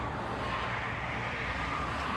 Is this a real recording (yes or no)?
yes